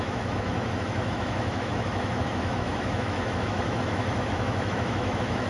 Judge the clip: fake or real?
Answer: fake